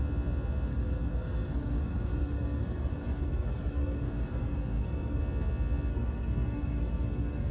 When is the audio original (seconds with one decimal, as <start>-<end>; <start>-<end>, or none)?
0.0-0.7; 5.2-5.9